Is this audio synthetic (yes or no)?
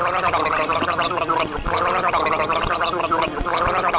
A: no